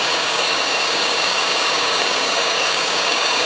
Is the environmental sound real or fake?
fake